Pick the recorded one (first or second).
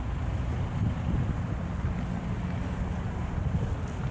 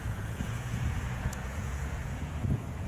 first